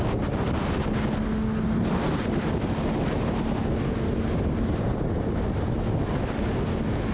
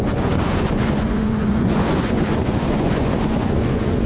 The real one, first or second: first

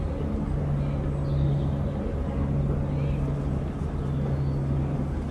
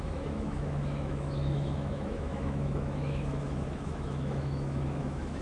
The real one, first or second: first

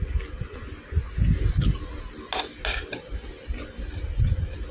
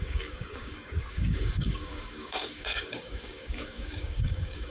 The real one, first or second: first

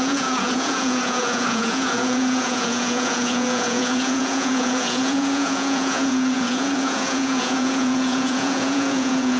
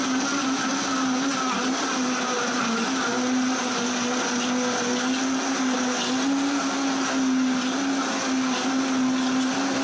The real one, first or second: second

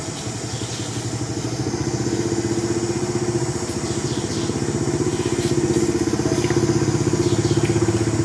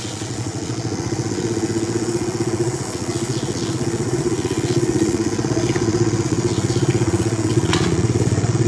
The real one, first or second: first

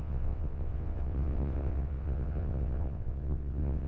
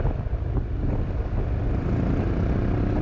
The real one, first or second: second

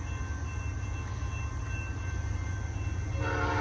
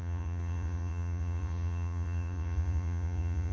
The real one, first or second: first